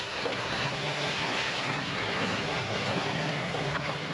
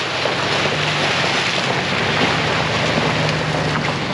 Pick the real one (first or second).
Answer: second